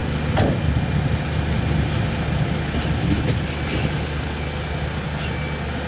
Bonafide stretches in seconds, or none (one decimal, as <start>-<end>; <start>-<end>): 0.0-5.9